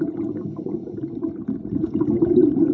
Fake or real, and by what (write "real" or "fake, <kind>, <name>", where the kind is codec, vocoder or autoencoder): fake, vocoder, Vocos